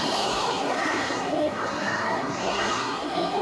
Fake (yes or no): yes